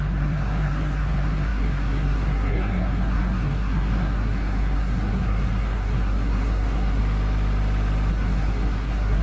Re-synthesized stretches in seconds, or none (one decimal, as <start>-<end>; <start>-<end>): 0.0-7.0; 8.1-9.2